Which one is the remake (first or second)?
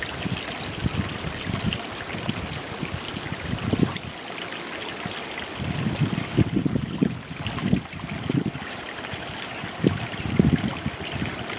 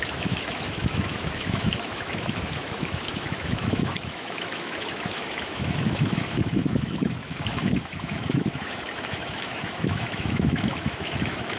second